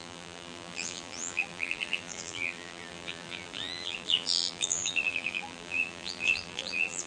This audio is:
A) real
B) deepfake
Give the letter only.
B